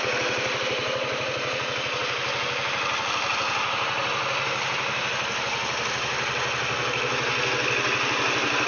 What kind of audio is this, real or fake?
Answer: real